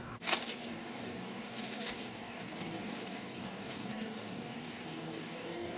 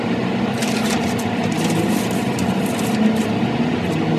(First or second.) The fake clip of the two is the first